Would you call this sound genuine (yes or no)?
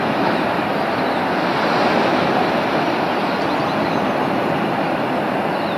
yes